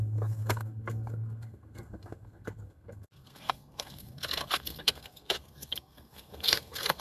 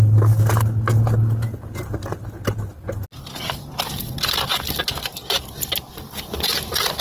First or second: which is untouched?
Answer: second